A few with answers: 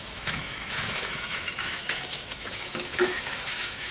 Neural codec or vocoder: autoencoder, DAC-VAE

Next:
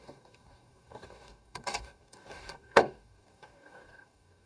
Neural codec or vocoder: codec, DAC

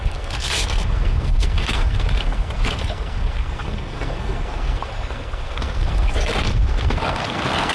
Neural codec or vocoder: codec, SNAC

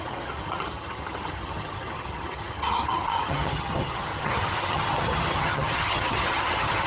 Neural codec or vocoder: vocoder, HiFi-GAN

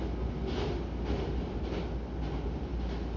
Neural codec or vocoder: none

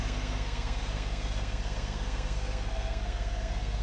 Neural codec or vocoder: codec, SNAC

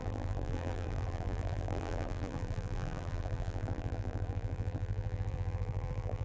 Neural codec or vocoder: vocoder, BigVGAN v2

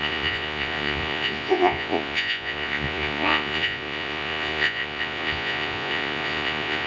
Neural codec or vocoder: vocoder, Vocos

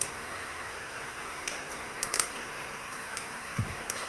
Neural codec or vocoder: codec, SNAC